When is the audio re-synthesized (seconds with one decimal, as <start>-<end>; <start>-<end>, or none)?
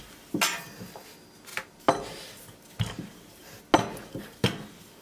none